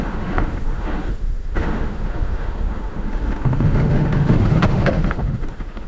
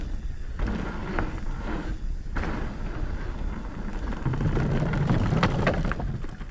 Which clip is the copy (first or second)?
first